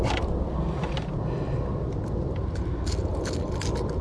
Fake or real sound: real